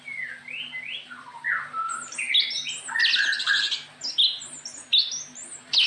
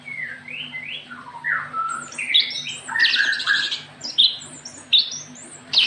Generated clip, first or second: second